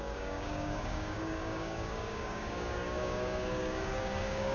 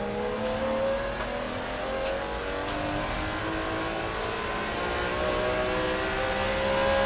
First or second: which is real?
second